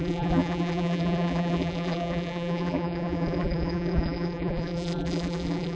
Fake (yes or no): yes